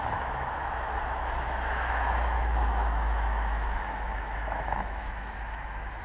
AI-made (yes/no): yes